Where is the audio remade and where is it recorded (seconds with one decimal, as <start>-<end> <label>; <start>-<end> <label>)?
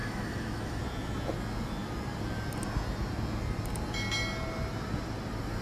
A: 0.0-0.8 remade; 0.8-5.6 recorded